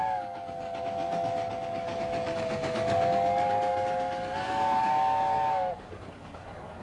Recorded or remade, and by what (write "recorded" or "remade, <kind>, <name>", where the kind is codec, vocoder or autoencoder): remade, codec, DAC